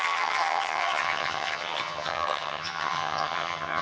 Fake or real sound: fake